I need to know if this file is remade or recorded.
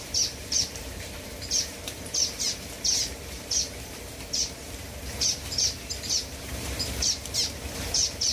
remade